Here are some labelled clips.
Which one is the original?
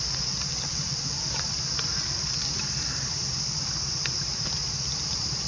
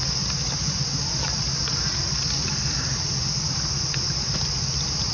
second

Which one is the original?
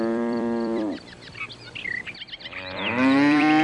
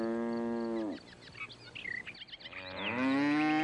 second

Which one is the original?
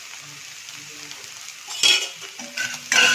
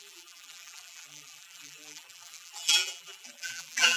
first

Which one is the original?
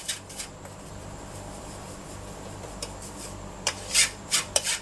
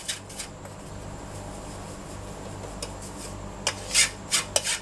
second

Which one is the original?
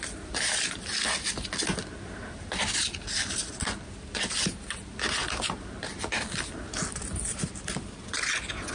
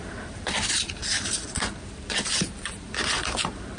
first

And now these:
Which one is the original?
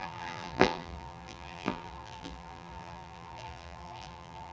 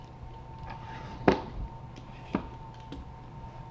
second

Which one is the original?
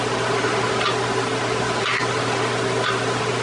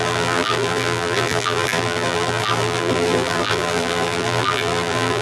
first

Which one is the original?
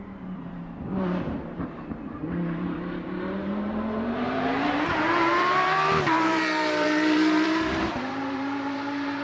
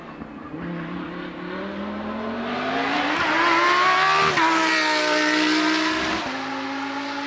second